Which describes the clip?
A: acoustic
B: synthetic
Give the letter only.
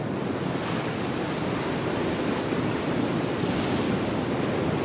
A